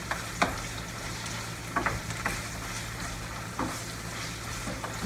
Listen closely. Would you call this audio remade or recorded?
recorded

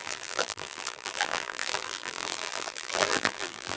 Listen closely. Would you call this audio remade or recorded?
remade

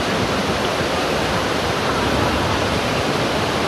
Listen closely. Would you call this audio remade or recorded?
remade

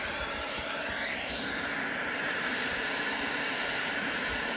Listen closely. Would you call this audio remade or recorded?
remade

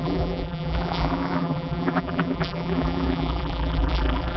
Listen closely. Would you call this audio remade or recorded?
remade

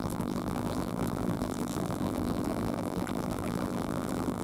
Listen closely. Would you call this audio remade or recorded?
remade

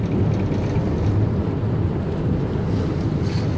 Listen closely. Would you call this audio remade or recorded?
recorded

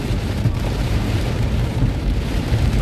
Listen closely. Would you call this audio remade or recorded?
remade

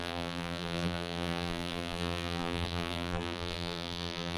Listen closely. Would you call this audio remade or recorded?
remade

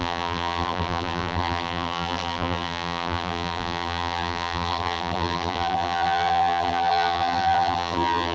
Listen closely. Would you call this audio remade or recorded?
remade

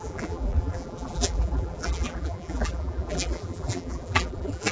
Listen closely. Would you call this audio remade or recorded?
remade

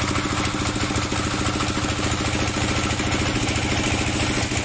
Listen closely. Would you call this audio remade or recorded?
recorded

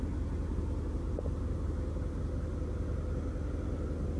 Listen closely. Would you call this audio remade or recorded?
recorded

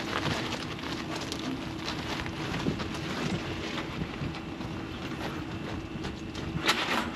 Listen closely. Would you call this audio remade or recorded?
recorded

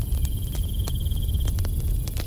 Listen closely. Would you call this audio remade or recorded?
remade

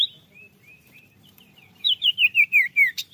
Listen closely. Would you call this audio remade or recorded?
remade